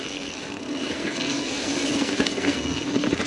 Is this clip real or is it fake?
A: fake